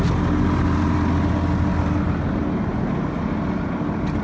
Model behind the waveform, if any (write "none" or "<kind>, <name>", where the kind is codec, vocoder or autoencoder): none